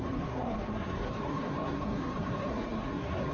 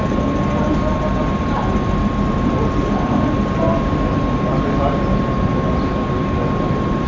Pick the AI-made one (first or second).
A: first